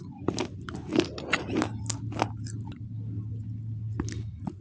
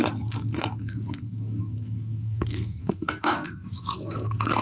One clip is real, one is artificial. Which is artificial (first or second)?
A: second